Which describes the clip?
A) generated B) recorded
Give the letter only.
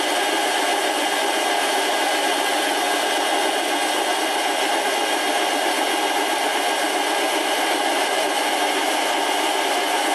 B